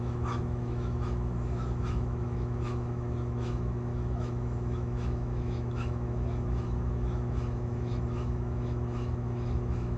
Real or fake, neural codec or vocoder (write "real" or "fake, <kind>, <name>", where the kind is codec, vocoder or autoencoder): fake, autoencoder, DAC-VAE